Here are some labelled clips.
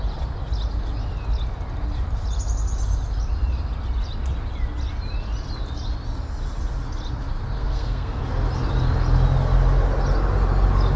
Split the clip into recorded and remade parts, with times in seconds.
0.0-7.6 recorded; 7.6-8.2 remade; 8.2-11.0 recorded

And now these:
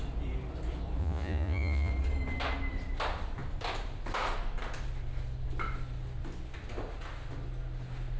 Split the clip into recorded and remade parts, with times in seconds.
0.0-1.0 recorded; 1.0-1.9 remade; 1.9-8.2 recorded

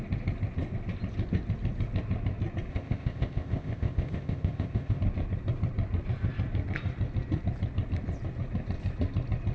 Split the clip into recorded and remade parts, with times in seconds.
0.0-2.7 recorded; 2.7-5.0 remade; 5.0-9.5 recorded